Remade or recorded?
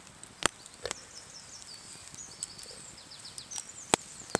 recorded